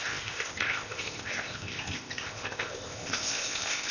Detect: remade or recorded remade